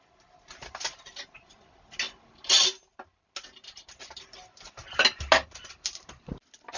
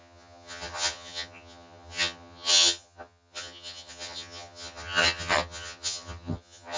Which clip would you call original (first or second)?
first